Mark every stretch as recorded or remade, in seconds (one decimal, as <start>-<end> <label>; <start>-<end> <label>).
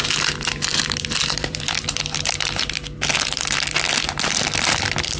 0.0-0.7 recorded; 0.7-3.4 remade; 3.4-5.2 recorded